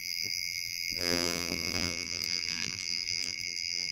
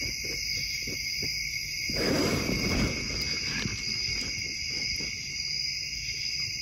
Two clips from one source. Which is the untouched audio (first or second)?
second